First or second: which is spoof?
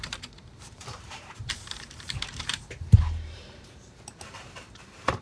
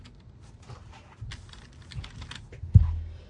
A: first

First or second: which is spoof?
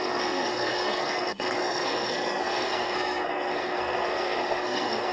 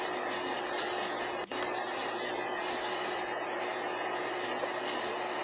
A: first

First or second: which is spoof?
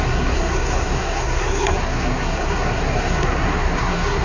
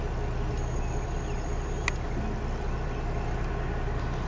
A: first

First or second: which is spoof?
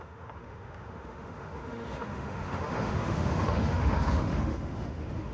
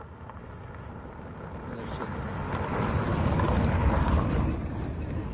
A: first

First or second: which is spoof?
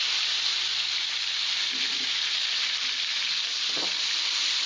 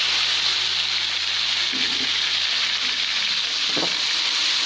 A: first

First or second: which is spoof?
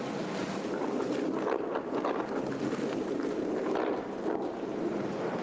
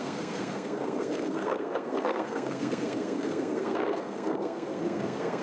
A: second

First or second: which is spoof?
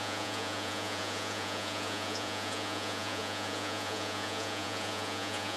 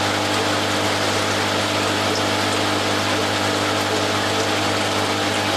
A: first